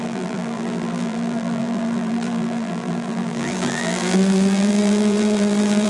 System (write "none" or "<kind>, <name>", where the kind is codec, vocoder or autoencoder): vocoder, BigVGAN v2